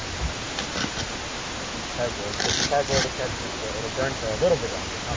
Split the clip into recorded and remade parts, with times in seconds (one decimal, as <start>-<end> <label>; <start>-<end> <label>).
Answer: 0.0-5.2 recorded